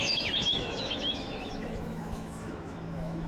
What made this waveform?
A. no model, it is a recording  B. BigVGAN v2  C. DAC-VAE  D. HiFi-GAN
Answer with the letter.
C